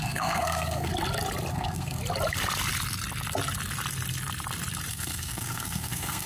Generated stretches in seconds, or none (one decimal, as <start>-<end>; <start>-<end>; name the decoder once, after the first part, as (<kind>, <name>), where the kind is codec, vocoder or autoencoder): 0.0-0.9 (codec, SNAC); 1.5-2.0; 4.9-6.3